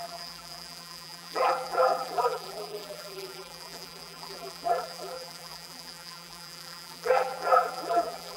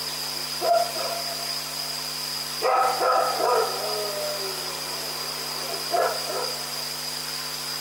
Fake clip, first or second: first